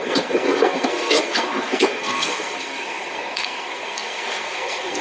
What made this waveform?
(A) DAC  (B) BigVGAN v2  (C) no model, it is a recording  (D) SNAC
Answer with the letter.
D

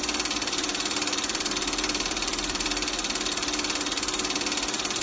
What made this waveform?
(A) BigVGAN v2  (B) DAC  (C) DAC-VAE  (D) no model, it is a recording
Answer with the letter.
A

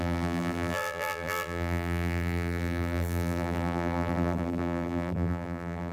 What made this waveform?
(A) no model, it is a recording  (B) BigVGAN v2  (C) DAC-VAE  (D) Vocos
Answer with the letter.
B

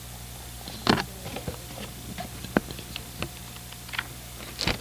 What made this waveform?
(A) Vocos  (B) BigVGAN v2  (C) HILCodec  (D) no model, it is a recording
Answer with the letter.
D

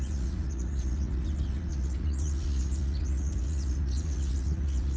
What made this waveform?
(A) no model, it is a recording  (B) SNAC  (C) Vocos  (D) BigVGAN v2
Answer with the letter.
C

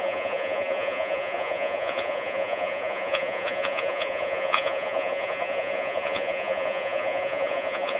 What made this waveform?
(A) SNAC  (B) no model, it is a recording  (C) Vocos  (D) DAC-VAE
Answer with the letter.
C